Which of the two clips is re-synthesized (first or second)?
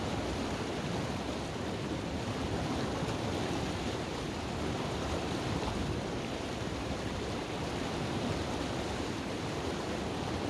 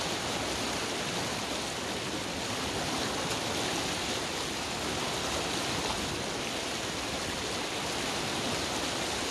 first